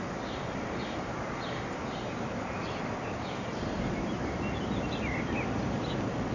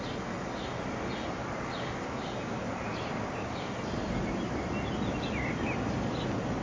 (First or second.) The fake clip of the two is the first